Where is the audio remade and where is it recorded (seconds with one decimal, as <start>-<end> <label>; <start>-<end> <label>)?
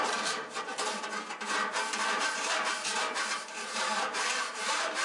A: 0.0-0.7 remade; 0.7-2.1 recorded; 2.1-5.0 remade